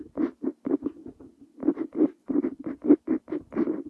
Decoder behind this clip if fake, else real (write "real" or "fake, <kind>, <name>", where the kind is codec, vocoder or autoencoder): real